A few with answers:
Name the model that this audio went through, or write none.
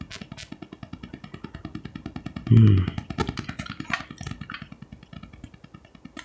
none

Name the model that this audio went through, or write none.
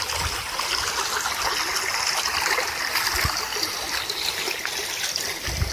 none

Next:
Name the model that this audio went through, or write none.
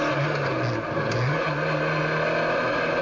none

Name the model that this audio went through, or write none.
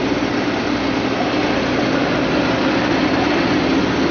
none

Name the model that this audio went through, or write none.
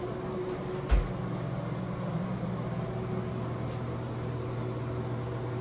none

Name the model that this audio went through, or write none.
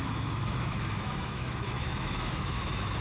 autoencoder, DAC-VAE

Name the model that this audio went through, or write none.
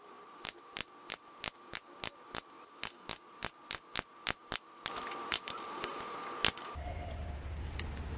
none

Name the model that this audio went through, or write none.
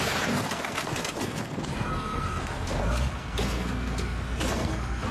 codec, SNAC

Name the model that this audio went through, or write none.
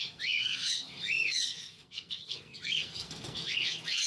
codec, SNAC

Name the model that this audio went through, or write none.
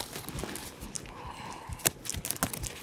none